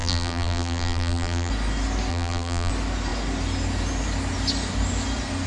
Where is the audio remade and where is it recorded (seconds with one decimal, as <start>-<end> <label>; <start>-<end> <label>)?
0.0-1.5 remade; 1.5-2.1 recorded; 2.1-2.7 remade; 2.7-5.5 recorded